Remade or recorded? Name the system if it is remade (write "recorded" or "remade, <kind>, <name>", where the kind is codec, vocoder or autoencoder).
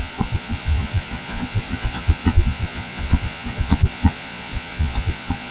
remade, vocoder, Vocos